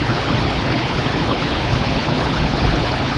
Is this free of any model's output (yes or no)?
no